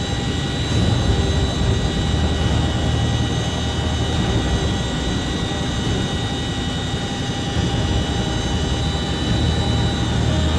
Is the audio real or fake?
real